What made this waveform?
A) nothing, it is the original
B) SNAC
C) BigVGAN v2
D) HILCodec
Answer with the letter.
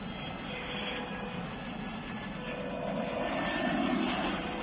A